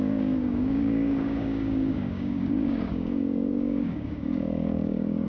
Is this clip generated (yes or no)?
yes